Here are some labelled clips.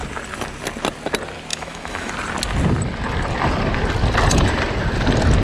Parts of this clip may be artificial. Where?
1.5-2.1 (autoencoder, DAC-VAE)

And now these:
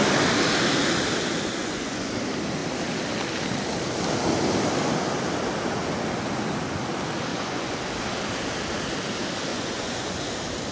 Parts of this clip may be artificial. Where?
1.6-2.1 (vocoder, Vocos); 7.3-7.8; 9.5-10.2

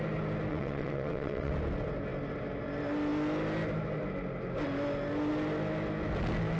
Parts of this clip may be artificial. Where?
0.5-1.5 (vocoder, WaveNeXt)

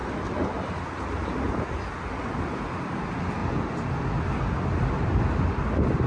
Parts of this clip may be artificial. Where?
none

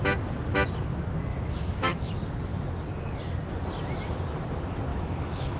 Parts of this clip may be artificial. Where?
1.3-2.1 (autoencoder, DAC-VAE); 4.9-5.6